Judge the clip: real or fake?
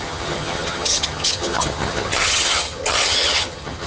fake